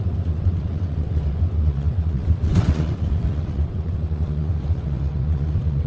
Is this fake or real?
fake